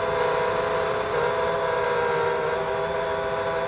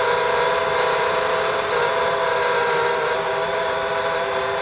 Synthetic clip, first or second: second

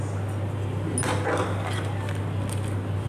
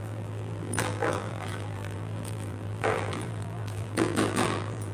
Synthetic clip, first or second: second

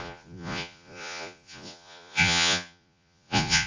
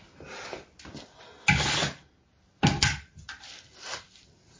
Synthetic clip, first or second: first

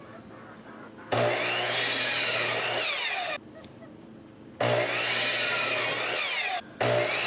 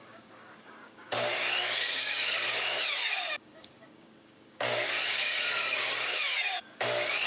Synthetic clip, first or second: second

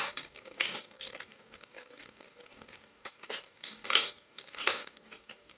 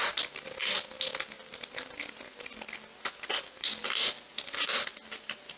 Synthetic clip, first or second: first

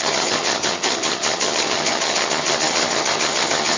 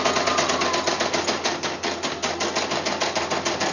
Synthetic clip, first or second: first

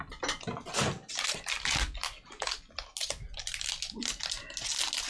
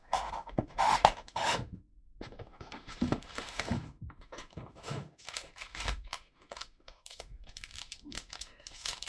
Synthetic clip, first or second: second